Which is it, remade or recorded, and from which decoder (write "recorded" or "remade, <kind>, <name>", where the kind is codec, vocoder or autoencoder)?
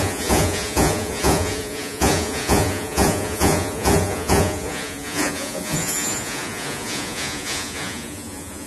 remade, vocoder, Vocos